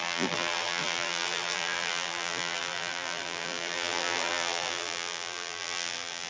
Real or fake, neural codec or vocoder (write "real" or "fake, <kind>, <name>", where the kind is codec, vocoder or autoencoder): fake, vocoder, BigVGAN v2